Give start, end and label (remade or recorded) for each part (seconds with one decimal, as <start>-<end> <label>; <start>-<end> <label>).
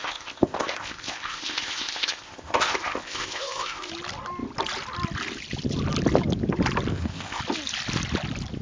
0.0-3.9 remade; 3.9-6.9 recorded; 6.9-7.4 remade; 7.4-8.6 recorded